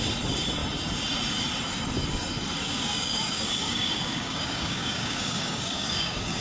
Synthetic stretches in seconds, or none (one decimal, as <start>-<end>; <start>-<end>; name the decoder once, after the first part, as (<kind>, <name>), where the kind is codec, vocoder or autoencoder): 2.6-6.4 (codec, DAC)